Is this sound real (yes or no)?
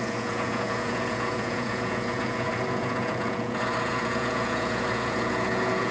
no